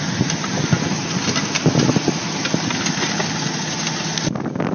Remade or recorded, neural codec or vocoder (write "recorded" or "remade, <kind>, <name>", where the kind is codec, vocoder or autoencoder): recorded